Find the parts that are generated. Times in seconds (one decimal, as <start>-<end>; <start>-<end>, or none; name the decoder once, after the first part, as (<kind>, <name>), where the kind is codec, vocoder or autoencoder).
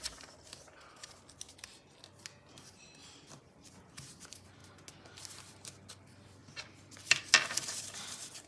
3.0-3.7 (vocoder, BigVGAN v2); 6.4-7.3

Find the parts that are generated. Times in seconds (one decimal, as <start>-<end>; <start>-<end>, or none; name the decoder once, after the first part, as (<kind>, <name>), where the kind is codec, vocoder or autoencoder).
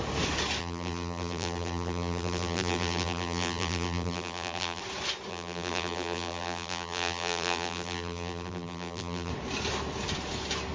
0.6-4.8 (vocoder, BigVGAN v2); 5.3-9.3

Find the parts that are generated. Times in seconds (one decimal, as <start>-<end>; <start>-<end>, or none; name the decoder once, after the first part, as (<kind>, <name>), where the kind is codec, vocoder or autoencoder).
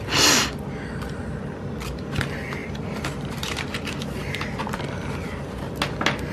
2.6-4.0 (vocoder, BigVGAN v2)